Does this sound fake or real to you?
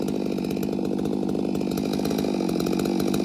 real